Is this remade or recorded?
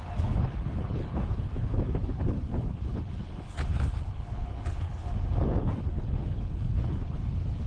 remade